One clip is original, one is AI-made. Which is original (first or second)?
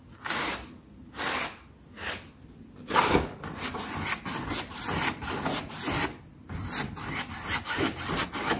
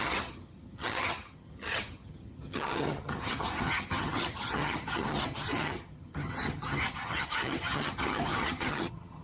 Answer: first